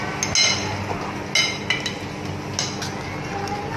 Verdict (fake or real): real